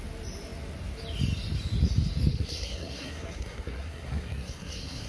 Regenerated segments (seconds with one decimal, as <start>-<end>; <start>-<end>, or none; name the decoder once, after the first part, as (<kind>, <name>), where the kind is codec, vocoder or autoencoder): 2.3-5.1 (codec, SNAC)